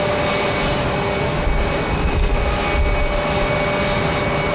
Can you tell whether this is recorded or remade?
recorded